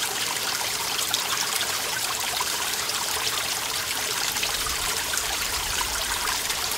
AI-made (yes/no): yes